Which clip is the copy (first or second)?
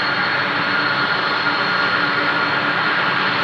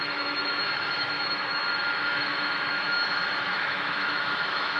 second